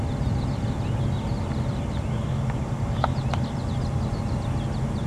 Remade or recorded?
recorded